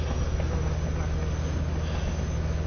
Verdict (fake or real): real